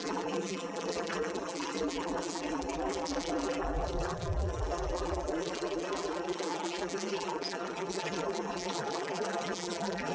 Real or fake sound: fake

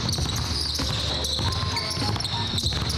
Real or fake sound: real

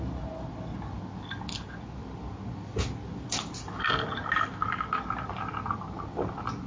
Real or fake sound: real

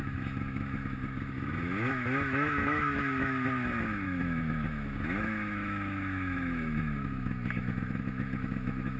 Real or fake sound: fake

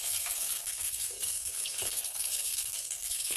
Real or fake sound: fake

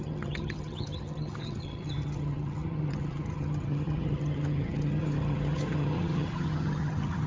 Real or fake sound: fake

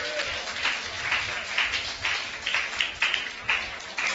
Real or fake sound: real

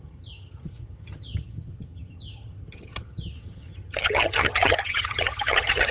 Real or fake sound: fake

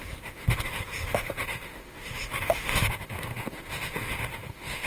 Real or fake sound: fake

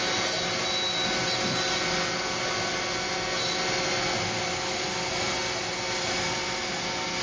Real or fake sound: real